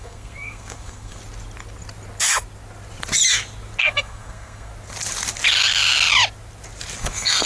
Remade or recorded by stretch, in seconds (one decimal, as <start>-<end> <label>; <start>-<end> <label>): 0.0-1.2 remade; 1.2-3.8 recorded; 3.8-4.7 remade; 4.7-7.0 recorded; 7.0-7.5 remade